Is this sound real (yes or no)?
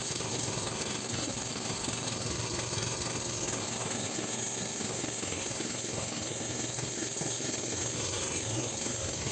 no